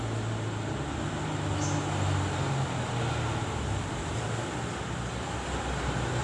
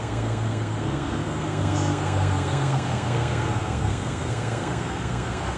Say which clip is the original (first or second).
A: first